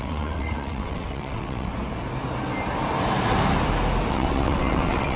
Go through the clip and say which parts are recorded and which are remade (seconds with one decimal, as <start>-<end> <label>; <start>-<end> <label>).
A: 0.0-1.7 remade; 1.7-4.1 recorded; 4.1-5.2 remade